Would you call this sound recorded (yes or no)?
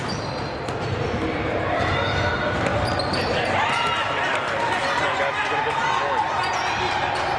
yes